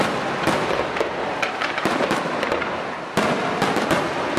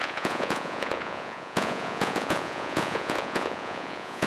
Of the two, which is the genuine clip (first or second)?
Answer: first